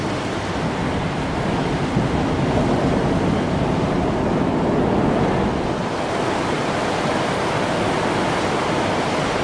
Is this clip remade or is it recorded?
recorded